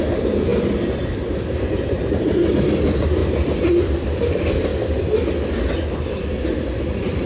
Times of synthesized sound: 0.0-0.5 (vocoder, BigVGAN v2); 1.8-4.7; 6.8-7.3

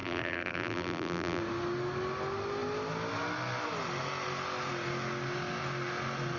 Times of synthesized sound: 0.0-1.4 (vocoder, BigVGAN v2)

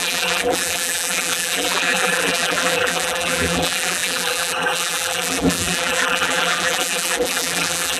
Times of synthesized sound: 0.0-8.0 (vocoder, BigVGAN v2)

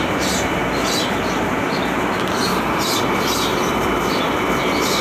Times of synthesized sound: 0.0-0.6 (vocoder, BigVGAN v2); 3.5-5.0

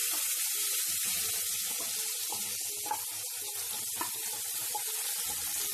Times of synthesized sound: 0.0-0.8 (vocoder, BigVGAN v2); 3.6-4.8

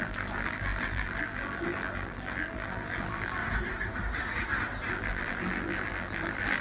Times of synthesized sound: 0.0-3.4 (vocoder, BigVGAN v2); 4.9-6.6

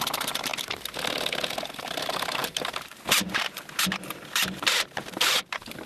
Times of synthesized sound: 0.0-0.5 (vocoder, BigVGAN v2); 2.0-5.9